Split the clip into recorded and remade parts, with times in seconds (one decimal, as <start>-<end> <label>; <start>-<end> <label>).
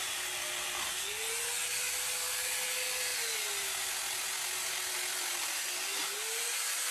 0.0-6.9 recorded